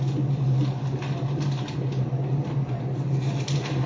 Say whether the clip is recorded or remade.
recorded